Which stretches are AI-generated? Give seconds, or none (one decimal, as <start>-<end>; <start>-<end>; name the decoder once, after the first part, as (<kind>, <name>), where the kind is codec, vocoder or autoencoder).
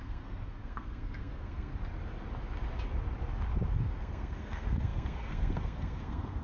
0.0-1.7 (codec, SNAC); 3.7-6.4